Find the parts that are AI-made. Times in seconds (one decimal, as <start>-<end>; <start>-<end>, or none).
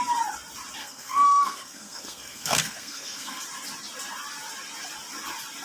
0.8-3.4